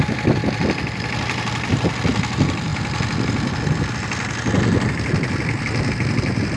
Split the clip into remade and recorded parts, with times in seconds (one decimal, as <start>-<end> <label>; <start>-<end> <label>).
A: 0.0-6.6 recorded